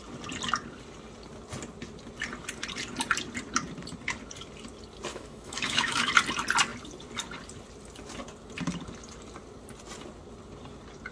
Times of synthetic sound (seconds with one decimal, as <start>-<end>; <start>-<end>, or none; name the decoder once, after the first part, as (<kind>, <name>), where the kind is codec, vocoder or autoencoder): 5.1-6.1 (autoencoder, DAC-VAE)